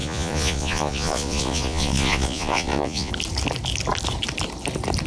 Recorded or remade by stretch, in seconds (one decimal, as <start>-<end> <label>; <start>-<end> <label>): 0.0-3.1 remade; 3.1-5.1 recorded